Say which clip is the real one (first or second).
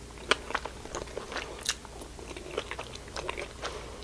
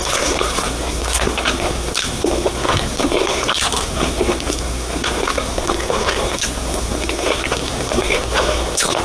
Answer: first